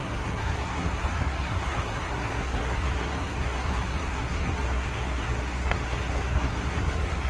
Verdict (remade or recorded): remade